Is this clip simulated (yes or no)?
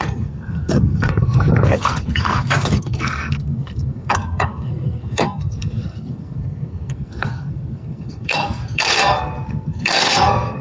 yes